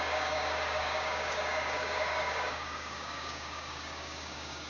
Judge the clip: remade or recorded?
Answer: remade